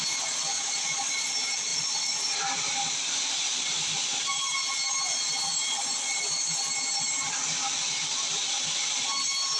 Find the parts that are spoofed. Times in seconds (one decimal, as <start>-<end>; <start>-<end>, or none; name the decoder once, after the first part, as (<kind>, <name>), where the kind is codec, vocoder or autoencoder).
1.7-4.3 (vocoder, BigVGAN v2); 5.5-6.5

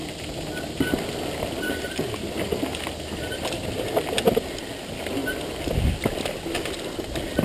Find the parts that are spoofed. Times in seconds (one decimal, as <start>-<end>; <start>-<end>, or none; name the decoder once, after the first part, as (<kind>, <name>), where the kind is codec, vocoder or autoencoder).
none